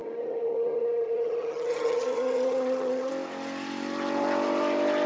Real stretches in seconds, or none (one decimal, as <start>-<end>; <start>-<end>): 3.1-5.1